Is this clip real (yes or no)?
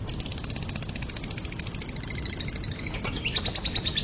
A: yes